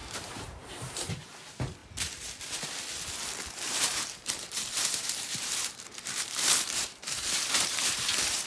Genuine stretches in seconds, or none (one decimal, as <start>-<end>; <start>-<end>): 1.8-3.5